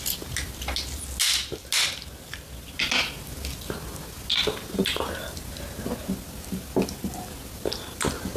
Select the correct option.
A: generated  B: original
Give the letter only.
B